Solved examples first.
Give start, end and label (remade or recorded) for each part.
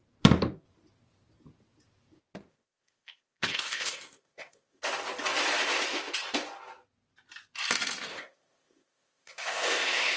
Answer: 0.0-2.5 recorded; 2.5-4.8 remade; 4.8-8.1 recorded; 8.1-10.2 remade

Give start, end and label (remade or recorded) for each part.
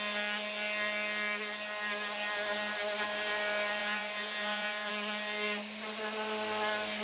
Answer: 0.0-3.8 recorded; 3.8-4.9 remade; 4.9-7.0 recorded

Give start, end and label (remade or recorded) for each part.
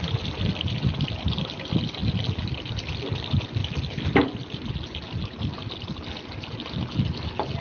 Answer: 0.0-2.0 remade; 2.0-2.7 recorded; 2.7-3.6 remade; 3.6-7.6 recorded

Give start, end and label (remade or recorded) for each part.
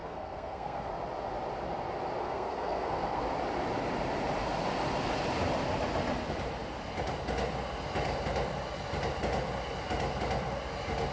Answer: 0.0-0.9 remade; 0.9-2.2 recorded; 2.2-3.2 remade; 3.2-11.1 recorded